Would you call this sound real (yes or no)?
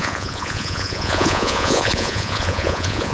no